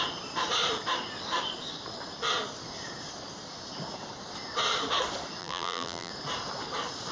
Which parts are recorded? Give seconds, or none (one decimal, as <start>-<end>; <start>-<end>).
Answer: 0.0-5.4; 6.1-7.1